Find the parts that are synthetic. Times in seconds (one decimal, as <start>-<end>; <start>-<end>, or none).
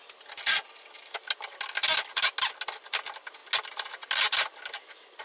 none